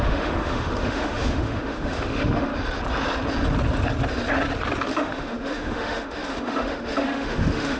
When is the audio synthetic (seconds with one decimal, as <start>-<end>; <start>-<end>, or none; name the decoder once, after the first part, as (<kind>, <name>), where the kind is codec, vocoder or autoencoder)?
0.0-2.5 (autoencoder, DAC-VAE); 4.9-7.8